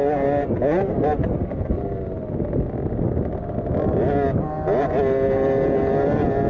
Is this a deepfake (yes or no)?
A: no